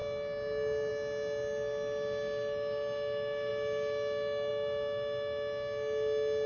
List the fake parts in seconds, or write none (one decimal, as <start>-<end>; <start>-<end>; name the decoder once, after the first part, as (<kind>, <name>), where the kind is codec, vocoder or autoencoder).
none